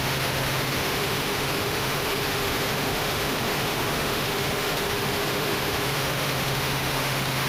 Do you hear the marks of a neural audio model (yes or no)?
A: yes